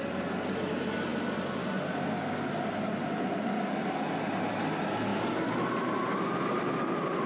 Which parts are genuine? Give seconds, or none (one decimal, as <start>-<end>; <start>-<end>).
0.0-7.3